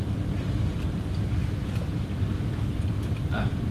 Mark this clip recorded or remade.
recorded